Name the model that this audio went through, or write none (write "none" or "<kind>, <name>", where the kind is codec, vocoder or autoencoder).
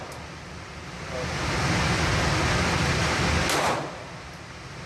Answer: none